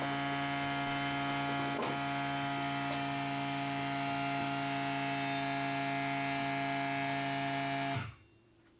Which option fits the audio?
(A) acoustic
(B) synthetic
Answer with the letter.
A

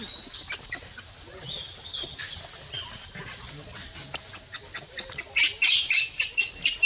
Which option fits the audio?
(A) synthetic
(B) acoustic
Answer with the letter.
B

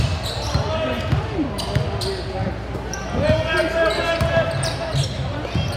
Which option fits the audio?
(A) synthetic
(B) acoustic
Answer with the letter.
B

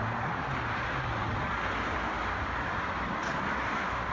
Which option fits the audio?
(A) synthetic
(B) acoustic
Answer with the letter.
B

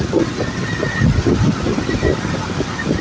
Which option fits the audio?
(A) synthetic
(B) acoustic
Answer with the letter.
B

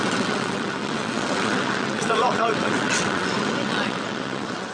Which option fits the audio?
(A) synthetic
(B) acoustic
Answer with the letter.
A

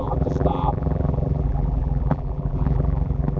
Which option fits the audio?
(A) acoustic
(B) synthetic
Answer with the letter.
B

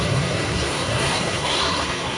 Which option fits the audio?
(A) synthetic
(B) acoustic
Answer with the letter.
A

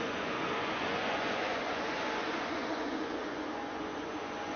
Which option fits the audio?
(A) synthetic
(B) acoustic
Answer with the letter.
A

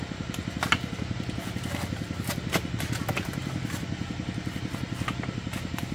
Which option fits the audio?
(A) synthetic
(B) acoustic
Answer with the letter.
B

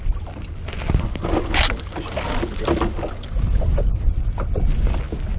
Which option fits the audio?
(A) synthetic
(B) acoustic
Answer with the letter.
B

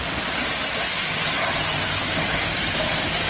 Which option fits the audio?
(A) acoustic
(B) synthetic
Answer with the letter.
A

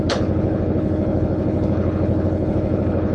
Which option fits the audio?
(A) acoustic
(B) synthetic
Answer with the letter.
B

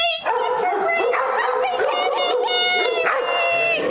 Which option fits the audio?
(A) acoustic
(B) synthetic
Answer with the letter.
A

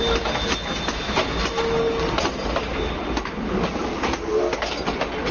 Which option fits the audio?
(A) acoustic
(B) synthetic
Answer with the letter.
A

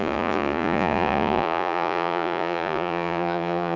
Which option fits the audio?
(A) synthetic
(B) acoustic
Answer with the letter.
A